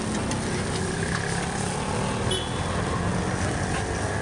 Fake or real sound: real